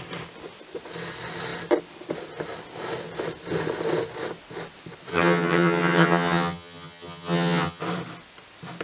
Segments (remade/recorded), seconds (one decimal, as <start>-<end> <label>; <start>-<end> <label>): 0.0-5.1 recorded; 5.1-7.8 remade; 7.8-8.8 recorded